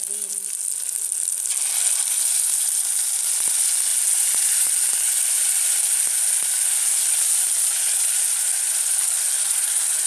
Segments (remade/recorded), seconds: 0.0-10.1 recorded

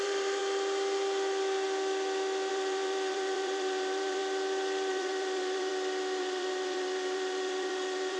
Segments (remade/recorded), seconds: 0.0-0.4 remade; 0.4-2.5 recorded; 2.5-4.2 remade; 4.2-4.9 recorded; 4.9-5.7 remade; 5.7-6.2 recorded; 6.2-8.2 remade

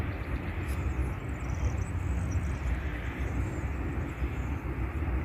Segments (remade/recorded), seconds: 0.0-1.0 remade; 1.0-2.5 recorded; 2.5-2.9 remade; 2.9-5.2 recorded

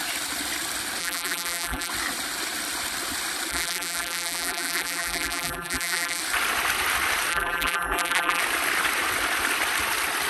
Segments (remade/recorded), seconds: 0.0-1.0 recorded; 1.0-1.9 remade; 1.9-3.5 recorded; 3.5-6.2 remade; 6.2-7.3 recorded; 7.3-8.4 remade; 8.4-10.3 recorded

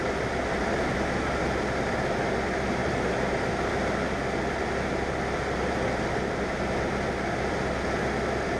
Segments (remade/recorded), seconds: 0.0-2.8 recorded; 2.8-3.6 remade; 3.6-8.6 recorded

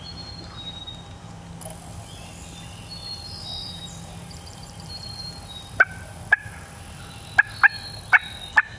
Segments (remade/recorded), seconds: 0.0-3.6 recorded; 3.6-7.0 remade; 7.0-8.8 recorded

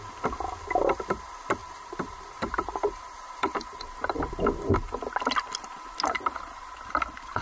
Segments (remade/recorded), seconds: 0.0-1.6 recorded; 1.6-4.2 remade; 4.2-7.4 recorded

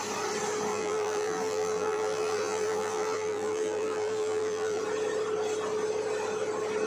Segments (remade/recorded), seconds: 0.0-0.7 recorded; 0.7-4.8 remade; 4.8-6.9 recorded